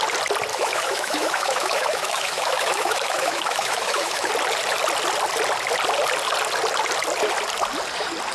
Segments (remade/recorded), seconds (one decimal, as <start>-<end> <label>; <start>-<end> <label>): 0.0-0.5 recorded; 0.5-4.3 remade; 4.3-8.3 recorded